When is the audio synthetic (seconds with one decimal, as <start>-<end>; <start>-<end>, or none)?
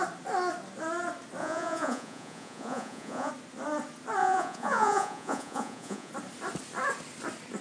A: 1.4-3.3; 4.2-6.1